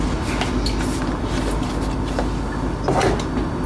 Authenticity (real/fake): real